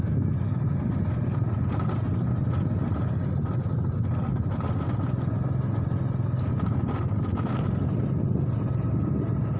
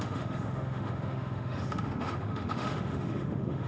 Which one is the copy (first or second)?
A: second